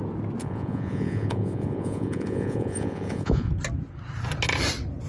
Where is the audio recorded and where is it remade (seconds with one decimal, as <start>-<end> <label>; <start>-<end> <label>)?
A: 0.0-0.4 recorded; 0.4-3.5 remade; 3.5-5.1 recorded

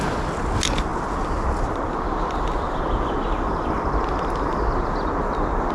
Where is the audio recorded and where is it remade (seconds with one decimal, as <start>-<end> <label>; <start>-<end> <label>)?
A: 0.0-5.7 recorded

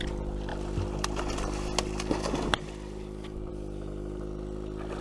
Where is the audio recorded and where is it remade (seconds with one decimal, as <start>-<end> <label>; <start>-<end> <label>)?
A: 0.0-5.0 recorded

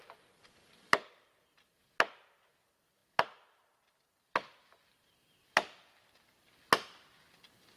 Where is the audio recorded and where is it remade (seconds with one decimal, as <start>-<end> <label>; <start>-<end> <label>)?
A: 0.0-7.8 recorded

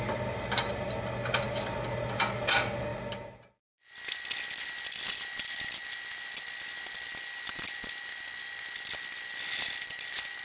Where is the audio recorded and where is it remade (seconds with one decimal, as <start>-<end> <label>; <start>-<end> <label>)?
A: 0.0-10.4 recorded

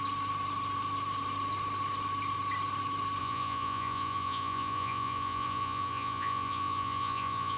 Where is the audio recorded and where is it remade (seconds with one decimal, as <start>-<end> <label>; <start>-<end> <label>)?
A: 0.0-3.2 recorded; 3.2-7.6 remade

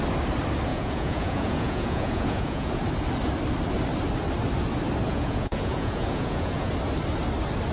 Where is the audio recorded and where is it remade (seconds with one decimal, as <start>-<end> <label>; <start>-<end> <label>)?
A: 0.0-0.7 recorded; 0.7-2.8 remade; 2.8-5.1 recorded; 5.1-6.7 remade; 6.7-7.7 recorded